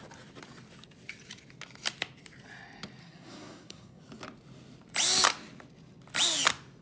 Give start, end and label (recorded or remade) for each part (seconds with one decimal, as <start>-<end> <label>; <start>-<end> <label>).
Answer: 0.0-3.0 recorded; 3.0-4.0 remade; 4.0-6.8 recorded